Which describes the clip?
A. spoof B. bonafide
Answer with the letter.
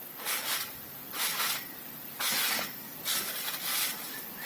B